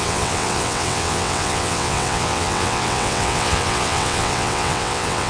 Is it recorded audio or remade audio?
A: remade